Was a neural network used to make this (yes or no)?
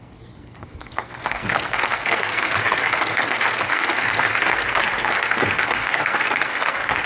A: yes